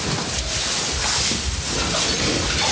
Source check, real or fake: real